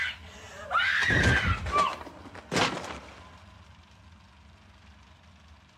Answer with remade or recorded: recorded